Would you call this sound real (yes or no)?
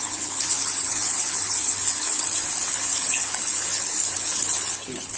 no